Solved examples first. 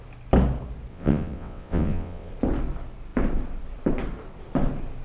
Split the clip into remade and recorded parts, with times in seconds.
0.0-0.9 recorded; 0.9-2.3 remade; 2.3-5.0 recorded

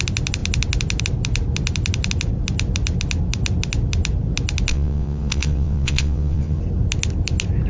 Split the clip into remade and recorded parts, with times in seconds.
0.0-4.7 recorded; 4.7-6.6 remade; 6.6-7.7 recorded

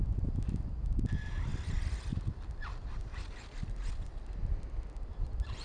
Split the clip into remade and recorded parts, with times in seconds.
0.0-5.6 recorded

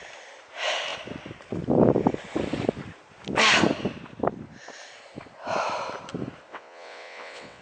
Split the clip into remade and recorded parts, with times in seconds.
0.0-6.5 recorded; 6.5-7.6 remade